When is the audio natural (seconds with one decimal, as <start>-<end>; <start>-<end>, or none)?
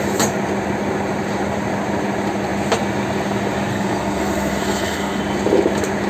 0.0-3.7; 5.2-6.1